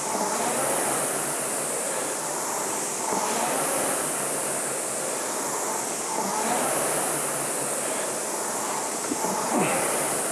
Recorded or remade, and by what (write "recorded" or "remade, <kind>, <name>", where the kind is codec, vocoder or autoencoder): remade, vocoder, BigVGAN v2